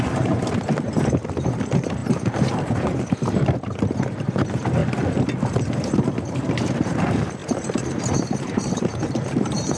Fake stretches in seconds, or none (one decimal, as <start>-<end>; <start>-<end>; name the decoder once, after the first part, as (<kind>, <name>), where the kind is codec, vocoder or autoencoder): 0.0-4.8 (vocoder, BigVGAN v2); 5.7-9.8